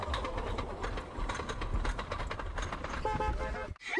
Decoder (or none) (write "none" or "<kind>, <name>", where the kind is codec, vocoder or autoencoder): none